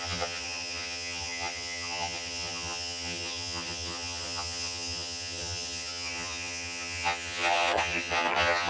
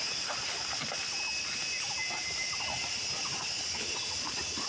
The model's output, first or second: first